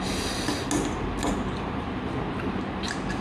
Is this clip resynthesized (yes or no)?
no